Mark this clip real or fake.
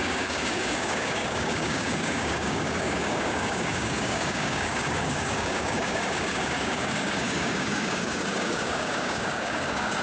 fake